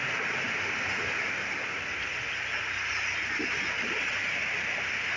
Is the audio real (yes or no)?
yes